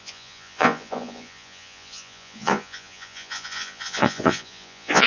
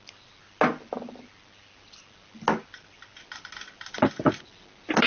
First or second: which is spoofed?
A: first